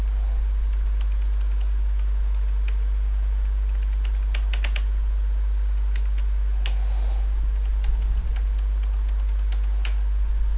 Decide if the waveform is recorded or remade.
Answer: recorded